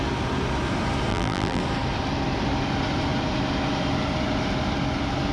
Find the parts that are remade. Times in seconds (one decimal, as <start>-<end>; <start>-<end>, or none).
1.1-1.6